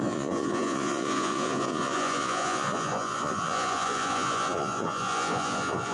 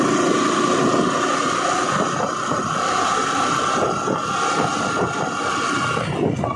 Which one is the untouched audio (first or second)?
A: second